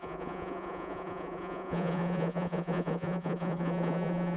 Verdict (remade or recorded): remade